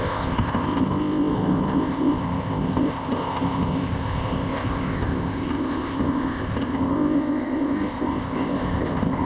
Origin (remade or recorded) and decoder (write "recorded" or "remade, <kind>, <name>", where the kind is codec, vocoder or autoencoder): remade, codec, ZipCodec